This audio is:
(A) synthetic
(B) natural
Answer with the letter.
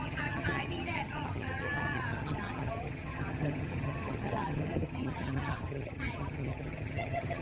A